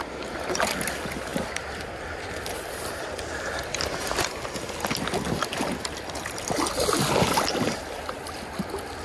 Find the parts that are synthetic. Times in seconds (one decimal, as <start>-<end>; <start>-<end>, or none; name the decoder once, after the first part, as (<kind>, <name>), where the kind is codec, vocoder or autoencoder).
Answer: none